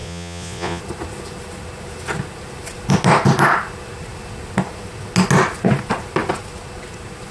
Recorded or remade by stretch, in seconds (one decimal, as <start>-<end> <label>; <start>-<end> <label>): 0.0-0.8 remade; 0.8-7.3 recorded